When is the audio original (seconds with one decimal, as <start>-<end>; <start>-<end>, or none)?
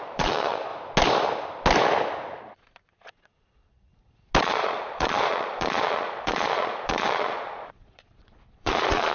0.7-2.4; 3.9-4.4